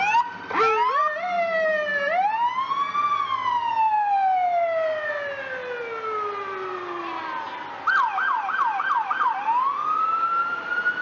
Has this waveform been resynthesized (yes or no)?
no